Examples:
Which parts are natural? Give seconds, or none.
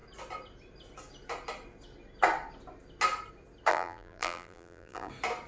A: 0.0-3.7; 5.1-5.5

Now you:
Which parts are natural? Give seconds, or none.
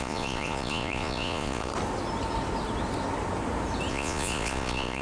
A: 1.7-3.9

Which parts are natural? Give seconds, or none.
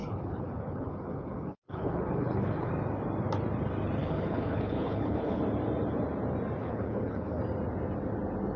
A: 2.7-4.0; 5.4-6.6; 7.4-8.6